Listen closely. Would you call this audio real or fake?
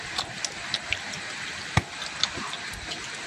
real